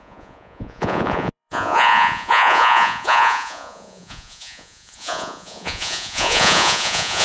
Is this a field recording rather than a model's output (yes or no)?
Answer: no